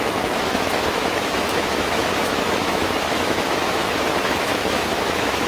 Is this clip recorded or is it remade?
remade